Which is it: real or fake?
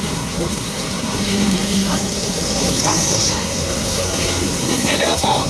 fake